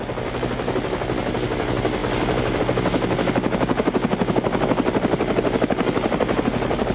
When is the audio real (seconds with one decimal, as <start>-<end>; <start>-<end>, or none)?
0.0-6.9

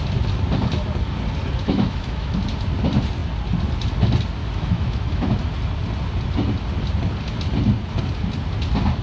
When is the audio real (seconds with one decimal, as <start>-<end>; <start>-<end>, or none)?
0.0-1.6; 2.4-4.4; 5.3-9.0

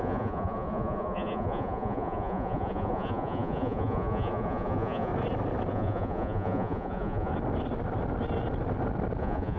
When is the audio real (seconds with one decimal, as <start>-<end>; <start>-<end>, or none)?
5.1-5.7; 7.3-9.2